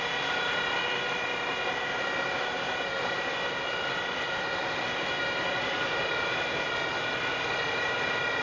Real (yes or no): yes